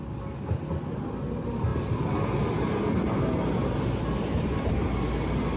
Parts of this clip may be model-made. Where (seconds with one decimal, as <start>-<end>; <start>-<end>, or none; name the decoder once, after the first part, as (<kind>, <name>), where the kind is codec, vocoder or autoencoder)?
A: none